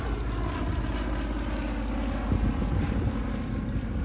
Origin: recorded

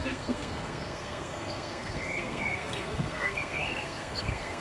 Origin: remade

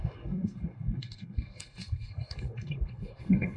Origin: remade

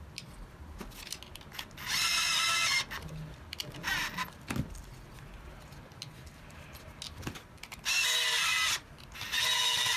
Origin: recorded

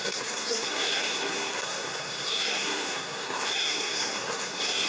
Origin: remade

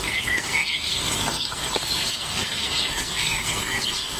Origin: remade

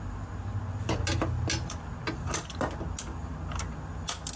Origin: recorded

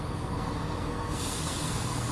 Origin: remade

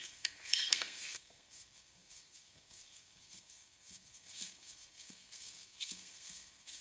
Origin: remade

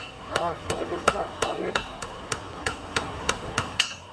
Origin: remade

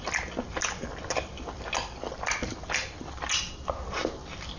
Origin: recorded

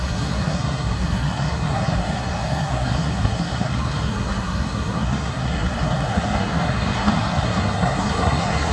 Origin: remade